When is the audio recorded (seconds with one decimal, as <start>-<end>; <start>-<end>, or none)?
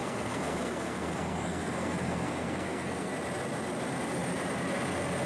3.1-5.3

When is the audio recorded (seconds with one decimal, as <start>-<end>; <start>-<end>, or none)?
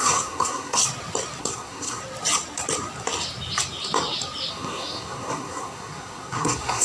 0.8-1.4; 2.0-4.5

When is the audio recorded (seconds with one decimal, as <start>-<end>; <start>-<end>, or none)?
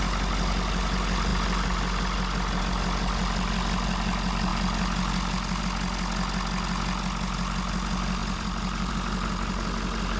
0.0-8.2; 8.9-10.2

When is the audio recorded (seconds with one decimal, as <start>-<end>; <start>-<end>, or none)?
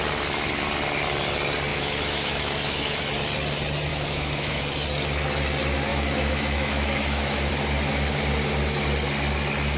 0.0-1.7; 3.1-3.9; 4.6-5.9; 7.5-9.8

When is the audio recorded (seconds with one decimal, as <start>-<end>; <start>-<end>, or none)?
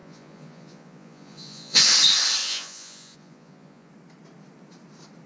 1.8-2.4; 3.9-5.3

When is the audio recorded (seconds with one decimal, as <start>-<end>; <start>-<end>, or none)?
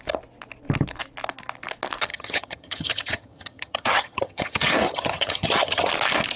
0.0-2.1; 5.9-6.4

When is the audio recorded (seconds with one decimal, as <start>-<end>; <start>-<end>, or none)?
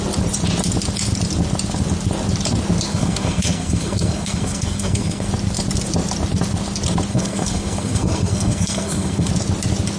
0.0-2.9; 5.3-7.1; 9.3-10.0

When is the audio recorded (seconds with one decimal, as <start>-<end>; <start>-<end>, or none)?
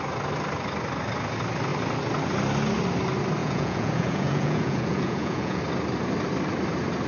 0.0-3.4; 5.6-7.1